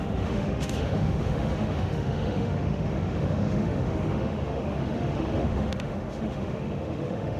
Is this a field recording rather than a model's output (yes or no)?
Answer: no